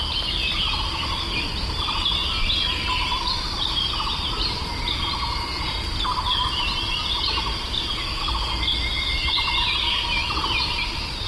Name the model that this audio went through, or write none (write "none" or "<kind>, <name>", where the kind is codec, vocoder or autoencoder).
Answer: none